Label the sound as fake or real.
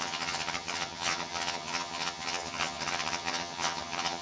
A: fake